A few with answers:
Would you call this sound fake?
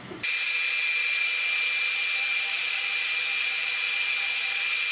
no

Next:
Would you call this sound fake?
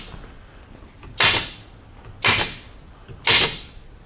no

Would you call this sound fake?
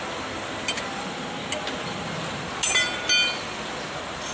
no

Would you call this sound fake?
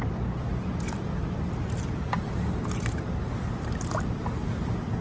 yes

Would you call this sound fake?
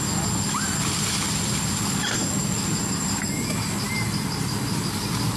no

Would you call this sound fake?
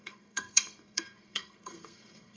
yes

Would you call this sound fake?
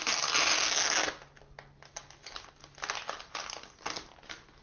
no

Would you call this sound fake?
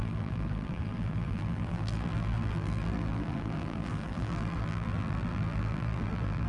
yes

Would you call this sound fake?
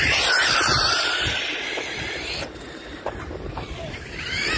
yes